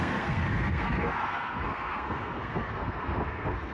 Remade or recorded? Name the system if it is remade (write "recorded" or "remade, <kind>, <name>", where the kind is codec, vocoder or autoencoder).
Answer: remade, codec, SNAC